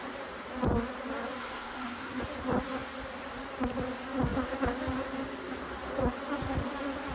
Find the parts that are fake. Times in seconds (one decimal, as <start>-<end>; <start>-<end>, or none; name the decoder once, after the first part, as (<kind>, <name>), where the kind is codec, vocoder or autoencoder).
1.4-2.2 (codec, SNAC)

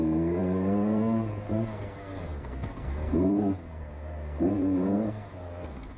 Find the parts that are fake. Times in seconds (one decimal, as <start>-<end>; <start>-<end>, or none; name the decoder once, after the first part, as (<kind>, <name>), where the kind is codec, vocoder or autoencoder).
0.0-6.0 (codec, SNAC)

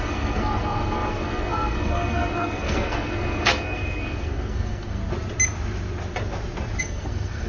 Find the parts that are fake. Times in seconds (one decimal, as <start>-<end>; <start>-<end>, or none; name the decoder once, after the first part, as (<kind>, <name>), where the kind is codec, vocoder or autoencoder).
0.0-5.0 (codec, SNAC); 6.8-7.5

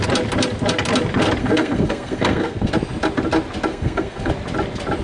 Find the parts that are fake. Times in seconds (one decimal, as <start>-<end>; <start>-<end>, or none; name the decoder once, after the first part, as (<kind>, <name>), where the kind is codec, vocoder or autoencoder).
1.4-2.7 (codec, SNAC); 3.7-4.3